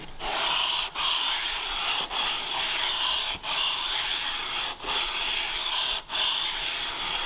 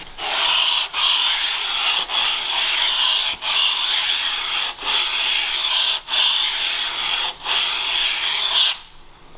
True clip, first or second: second